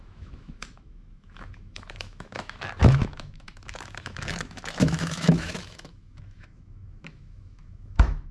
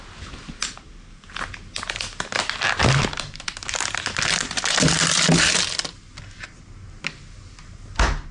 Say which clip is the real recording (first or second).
second